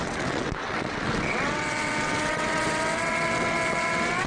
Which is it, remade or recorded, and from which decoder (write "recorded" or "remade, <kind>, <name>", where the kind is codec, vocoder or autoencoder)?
remade, vocoder, WaveNeXt